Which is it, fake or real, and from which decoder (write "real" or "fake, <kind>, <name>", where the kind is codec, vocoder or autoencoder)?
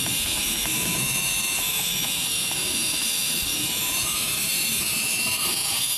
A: fake, autoencoder, DAC-VAE